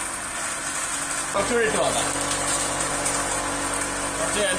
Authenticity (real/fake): real